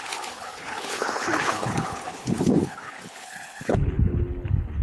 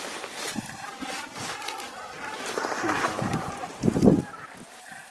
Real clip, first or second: second